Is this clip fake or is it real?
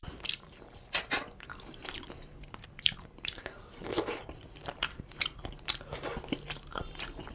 fake